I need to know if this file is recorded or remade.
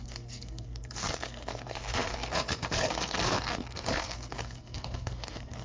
remade